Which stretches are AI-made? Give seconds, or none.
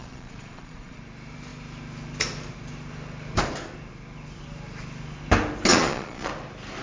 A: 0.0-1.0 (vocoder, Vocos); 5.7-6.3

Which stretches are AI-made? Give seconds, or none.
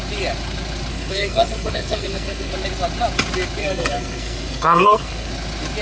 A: 0.9-2.5 (codec, SNAC); 3.6-5.3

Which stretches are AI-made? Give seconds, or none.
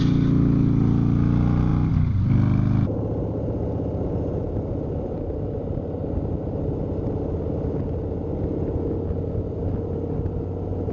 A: none